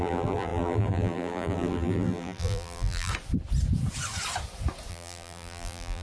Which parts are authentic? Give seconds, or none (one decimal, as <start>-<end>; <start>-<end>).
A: 3.1-4.9